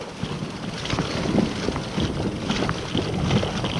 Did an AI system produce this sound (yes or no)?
no